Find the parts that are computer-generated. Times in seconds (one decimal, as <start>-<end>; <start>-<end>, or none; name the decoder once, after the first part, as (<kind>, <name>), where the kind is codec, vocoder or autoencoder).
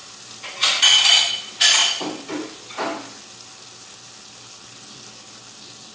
none